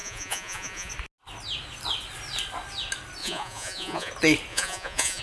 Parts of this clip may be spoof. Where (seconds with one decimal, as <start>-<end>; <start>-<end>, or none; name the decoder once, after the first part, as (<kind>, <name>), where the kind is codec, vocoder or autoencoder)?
0.0-0.9 (vocoder, Vocos); 3.2-4.1; 4.5-5.2